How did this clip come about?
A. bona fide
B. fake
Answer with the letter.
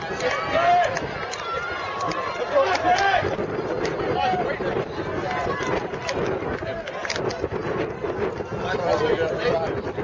A